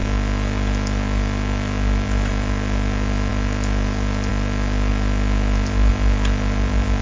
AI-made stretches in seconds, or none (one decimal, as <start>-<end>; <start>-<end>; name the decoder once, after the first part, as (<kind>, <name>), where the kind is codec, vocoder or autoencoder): none